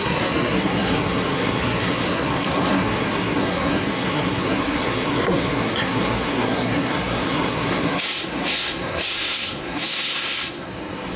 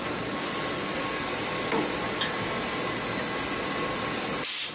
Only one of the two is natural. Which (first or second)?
second